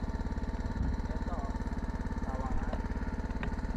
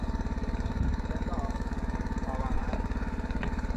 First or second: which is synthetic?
second